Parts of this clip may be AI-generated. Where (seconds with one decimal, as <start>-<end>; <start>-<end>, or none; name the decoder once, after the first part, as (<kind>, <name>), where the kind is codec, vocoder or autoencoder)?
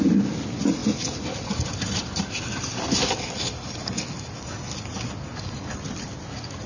none